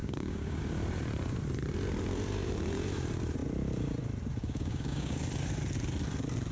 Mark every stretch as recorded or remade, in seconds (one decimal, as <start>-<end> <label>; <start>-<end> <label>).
0.0-0.6 remade; 0.6-4.4 recorded; 4.4-5.2 remade; 5.2-6.5 recorded